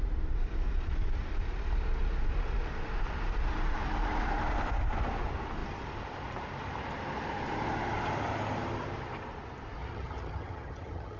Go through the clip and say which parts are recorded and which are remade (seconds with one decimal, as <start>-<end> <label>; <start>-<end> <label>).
0.0-9.8 recorded; 9.8-11.2 remade